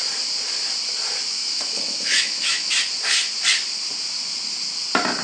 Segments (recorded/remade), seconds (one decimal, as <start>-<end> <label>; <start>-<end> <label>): 0.0-1.4 recorded; 1.4-2.7 remade; 2.7-5.2 recorded

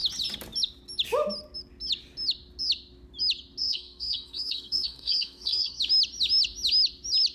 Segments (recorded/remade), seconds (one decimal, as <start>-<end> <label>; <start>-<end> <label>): 0.0-3.6 recorded; 3.6-5.8 remade; 5.8-7.3 recorded

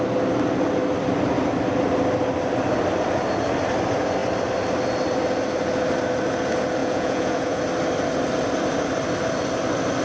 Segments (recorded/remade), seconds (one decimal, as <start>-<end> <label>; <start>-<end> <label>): 0.0-6.8 recorded; 6.8-7.6 remade; 7.6-10.0 recorded

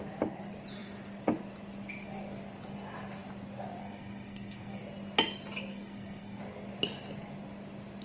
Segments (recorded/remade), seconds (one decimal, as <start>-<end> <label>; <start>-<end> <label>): 0.0-3.8 recorded; 3.8-4.8 remade; 4.8-5.7 recorded; 5.7-6.4 remade; 6.4-8.0 recorded

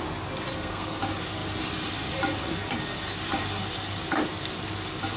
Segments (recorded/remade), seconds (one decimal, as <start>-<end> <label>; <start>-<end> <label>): 0.0-0.5 recorded; 0.5-1.0 remade; 1.0-5.2 recorded